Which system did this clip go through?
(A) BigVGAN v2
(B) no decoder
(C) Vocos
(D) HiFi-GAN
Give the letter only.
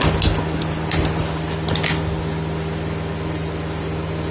B